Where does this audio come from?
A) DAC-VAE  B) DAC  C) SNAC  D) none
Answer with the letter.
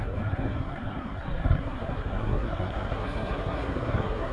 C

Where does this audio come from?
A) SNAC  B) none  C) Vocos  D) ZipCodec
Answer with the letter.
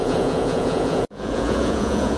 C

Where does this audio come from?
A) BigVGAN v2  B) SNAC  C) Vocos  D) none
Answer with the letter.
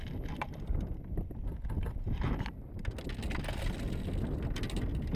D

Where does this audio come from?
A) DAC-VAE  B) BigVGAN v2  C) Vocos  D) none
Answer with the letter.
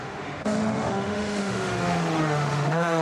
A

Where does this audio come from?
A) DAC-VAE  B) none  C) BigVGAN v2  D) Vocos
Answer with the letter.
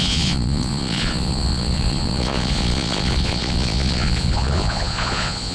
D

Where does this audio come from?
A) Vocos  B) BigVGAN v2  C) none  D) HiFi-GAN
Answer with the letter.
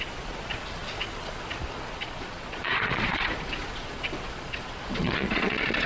A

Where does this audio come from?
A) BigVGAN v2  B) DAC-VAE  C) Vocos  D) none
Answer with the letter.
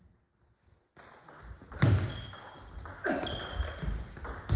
D